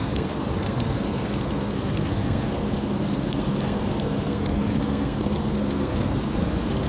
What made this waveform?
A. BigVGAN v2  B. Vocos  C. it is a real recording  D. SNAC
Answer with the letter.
D